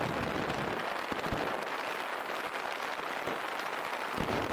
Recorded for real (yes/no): yes